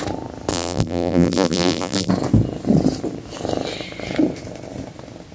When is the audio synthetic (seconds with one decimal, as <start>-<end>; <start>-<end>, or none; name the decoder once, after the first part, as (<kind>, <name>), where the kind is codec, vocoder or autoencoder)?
0.5-2.1 (vocoder, BigVGAN v2)

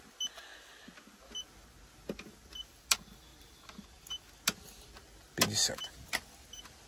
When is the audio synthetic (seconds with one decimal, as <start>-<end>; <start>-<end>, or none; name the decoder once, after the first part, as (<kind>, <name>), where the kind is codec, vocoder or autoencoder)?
3.3-4.0 (vocoder, BigVGAN v2)